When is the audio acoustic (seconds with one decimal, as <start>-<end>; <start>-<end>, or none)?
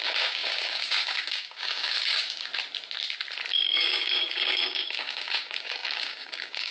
2.5-3.5